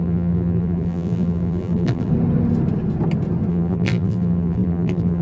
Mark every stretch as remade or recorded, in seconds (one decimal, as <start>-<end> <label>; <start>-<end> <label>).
0.0-2.1 remade; 2.1-3.5 recorded; 3.5-5.2 remade